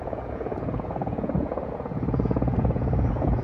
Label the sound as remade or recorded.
remade